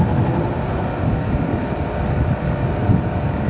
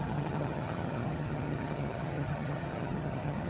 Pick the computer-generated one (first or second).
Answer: second